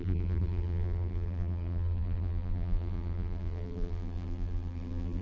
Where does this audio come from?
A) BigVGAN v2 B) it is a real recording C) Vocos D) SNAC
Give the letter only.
A